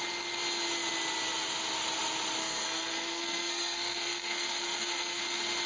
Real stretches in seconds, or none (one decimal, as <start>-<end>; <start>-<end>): 0.0-2.4; 5.2-5.7